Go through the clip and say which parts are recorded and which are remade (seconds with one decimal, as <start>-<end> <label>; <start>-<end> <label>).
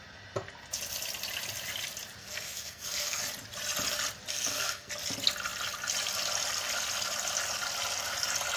0.0-2.2 recorded; 2.2-3.2 remade; 3.2-4.3 recorded; 4.3-4.9 remade; 4.9-8.6 recorded